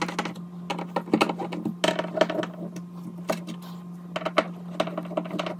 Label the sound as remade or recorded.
recorded